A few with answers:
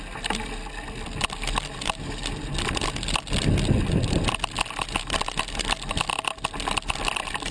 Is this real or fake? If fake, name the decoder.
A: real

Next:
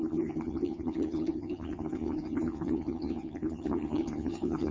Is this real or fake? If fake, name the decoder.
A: fake, vocoder, HiFi-GAN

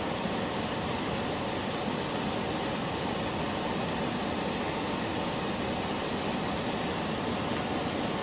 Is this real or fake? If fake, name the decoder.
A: real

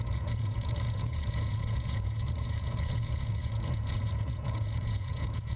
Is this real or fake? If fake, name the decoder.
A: fake, vocoder, Vocos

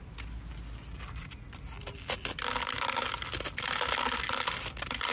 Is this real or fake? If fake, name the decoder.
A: real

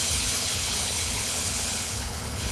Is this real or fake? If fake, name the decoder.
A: fake, codec, HILCodec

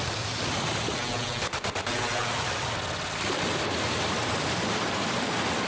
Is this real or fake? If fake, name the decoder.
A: real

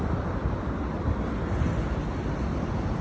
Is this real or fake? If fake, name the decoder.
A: real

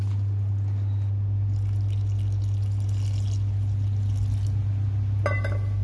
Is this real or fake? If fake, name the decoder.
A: real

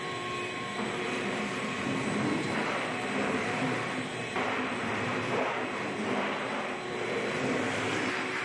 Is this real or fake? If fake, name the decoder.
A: fake, vocoder, BigVGAN v2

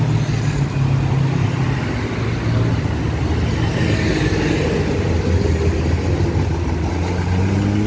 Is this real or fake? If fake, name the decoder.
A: real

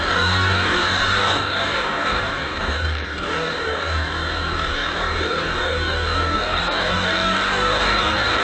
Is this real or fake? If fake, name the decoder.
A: fake, codec, DAC